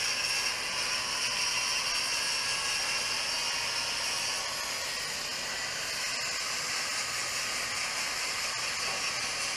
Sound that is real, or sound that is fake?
real